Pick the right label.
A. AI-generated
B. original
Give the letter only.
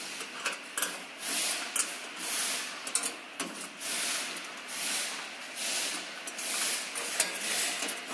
B